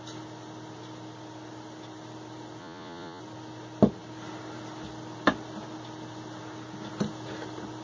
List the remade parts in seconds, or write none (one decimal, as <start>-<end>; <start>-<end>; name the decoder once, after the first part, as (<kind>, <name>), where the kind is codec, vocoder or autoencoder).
2.6-3.2 (vocoder, Vocos)